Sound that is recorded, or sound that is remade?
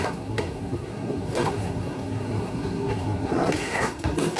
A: remade